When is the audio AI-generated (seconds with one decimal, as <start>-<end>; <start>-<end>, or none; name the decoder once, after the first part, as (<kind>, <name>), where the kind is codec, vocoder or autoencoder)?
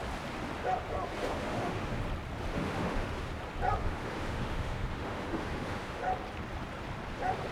1.2-2.0 (autoencoder, DAC-VAE); 2.5-3.3; 3.8-6.0